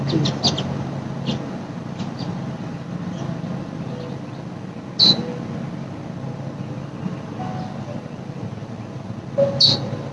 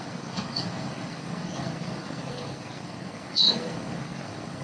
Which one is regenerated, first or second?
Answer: second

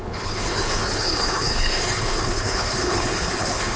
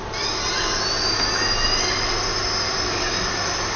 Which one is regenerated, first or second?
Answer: first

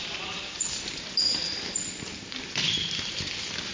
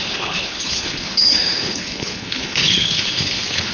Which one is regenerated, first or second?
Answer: second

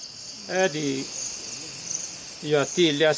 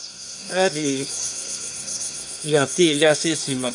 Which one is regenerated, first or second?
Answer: second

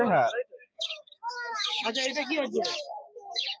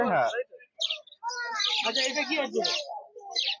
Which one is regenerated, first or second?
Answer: first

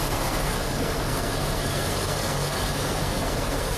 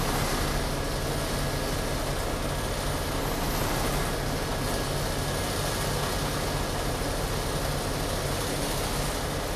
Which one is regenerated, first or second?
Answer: first